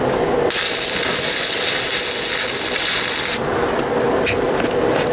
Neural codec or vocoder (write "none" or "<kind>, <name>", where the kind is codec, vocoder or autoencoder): none